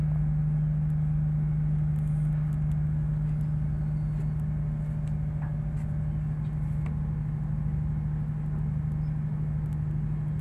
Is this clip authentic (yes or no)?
yes